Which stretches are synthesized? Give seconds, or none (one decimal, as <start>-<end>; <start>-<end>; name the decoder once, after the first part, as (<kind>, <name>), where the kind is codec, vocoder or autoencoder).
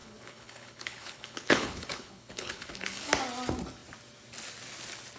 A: 0.0-3.1 (codec, HILCodec)